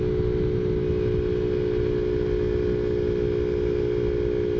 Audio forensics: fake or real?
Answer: real